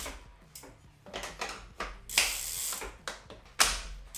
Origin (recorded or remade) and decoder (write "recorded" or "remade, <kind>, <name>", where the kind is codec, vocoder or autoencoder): recorded